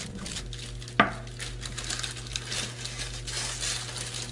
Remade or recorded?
recorded